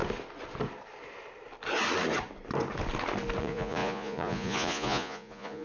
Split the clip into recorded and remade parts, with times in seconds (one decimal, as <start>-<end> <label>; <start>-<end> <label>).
0.0-3.4 recorded; 3.4-5.6 remade